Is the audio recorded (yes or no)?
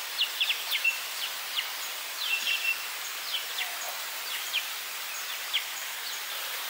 no